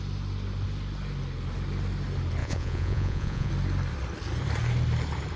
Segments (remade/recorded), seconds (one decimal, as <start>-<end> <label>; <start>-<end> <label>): 0.0-2.4 recorded; 2.4-3.5 remade; 3.5-5.4 recorded